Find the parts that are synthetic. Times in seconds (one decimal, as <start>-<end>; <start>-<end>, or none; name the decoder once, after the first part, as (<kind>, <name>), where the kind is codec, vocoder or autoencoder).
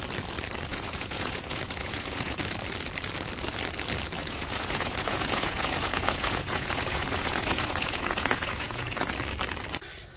0.7-2.4 (vocoder, Vocos); 4.2-9.0